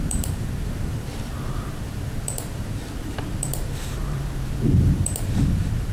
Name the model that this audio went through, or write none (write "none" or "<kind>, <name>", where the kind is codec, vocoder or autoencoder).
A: vocoder, BigVGAN v2